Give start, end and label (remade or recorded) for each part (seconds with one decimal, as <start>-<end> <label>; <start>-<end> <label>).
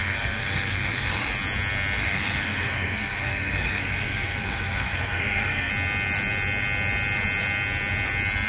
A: 0.0-1.2 remade; 1.2-2.0 recorded; 2.0-5.7 remade; 5.7-8.5 recorded